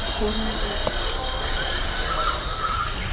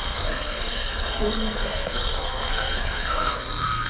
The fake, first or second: second